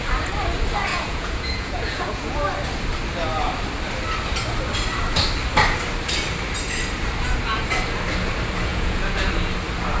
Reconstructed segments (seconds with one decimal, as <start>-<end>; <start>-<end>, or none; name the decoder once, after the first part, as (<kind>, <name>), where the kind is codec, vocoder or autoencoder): 0.9-2.4 (vocoder, Vocos); 8.7-9.3